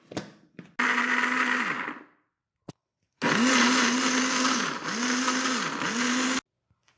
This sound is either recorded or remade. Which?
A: recorded